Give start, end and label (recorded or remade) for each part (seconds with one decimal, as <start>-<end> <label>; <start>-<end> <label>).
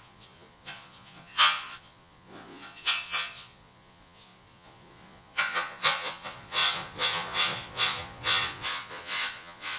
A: 0.0-9.8 remade